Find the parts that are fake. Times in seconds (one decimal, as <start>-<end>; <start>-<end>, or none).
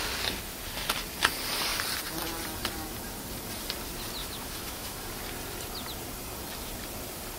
4.2-5.1